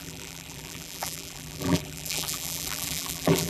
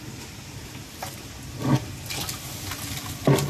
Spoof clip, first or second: first